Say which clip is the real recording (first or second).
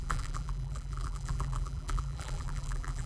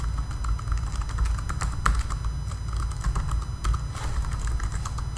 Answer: second